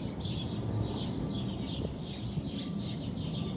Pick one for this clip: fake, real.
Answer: real